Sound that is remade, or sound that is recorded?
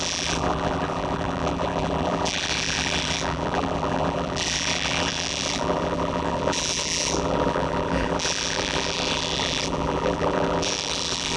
remade